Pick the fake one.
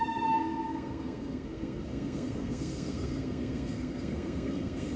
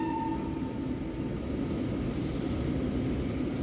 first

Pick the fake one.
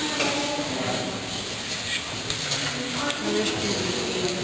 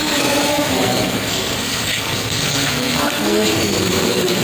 second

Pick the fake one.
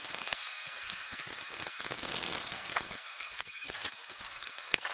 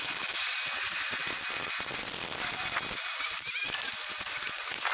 first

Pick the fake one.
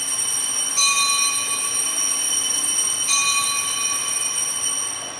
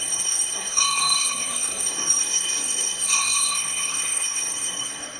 second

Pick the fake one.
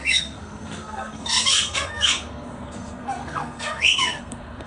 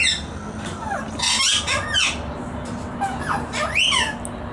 first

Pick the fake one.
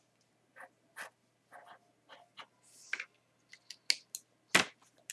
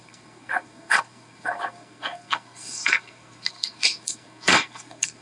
second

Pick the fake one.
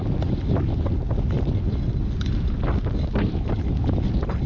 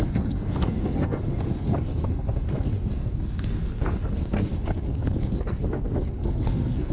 second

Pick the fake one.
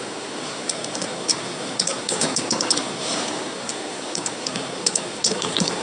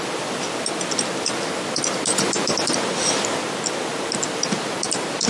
first